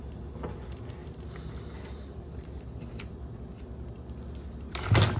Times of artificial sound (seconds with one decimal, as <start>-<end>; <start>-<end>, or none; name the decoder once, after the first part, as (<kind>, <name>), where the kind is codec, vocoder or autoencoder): none